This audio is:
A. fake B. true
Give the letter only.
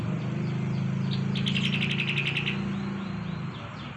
B